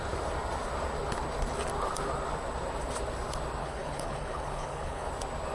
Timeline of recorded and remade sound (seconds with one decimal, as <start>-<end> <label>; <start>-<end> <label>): 0.0-3.6 recorded; 3.6-5.1 remade; 5.1-5.5 recorded